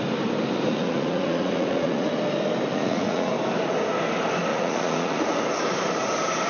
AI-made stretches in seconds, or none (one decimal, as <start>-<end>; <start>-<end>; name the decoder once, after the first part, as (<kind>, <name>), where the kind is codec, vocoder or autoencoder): 0.7-2.1 (vocoder, Vocos); 2.7-3.3; 4.5-5.2